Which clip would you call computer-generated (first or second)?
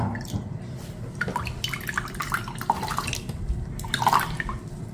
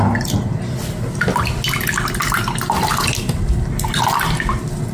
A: first